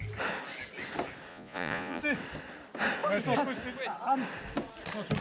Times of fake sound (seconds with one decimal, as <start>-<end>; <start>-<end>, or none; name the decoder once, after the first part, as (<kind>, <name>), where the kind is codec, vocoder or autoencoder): 1.3-2.0 (vocoder, Vocos)